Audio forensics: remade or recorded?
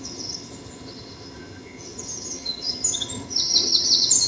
remade